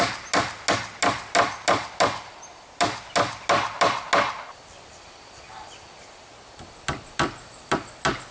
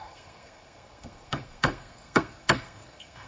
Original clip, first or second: first